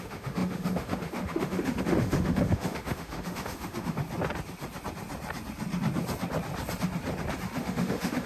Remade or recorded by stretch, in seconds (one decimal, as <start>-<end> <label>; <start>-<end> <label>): 0.0-4.0 remade; 4.0-7.6 recorded; 7.6-8.3 remade